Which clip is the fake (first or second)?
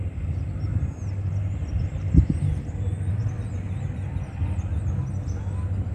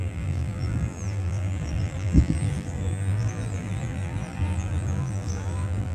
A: second